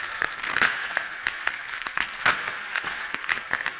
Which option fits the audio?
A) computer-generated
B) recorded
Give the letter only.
A